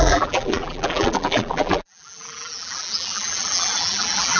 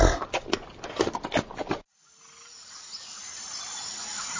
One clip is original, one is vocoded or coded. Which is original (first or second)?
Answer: second